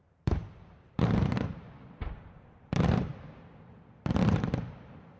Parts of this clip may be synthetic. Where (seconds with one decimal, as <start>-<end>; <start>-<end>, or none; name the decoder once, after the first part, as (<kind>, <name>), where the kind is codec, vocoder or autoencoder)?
0.0-3.1 (vocoder, BigVGAN v2); 3.6-5.2